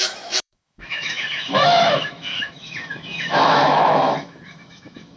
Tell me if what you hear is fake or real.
fake